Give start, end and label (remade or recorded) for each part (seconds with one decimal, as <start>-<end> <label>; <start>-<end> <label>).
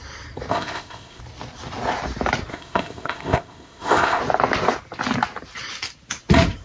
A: 0.0-0.5 recorded; 0.5-1.2 remade; 1.2-2.5 recorded; 2.5-4.2 remade; 4.2-6.6 recorded